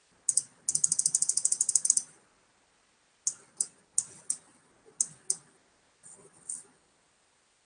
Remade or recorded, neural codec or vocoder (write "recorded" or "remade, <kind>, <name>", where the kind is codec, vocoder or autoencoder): recorded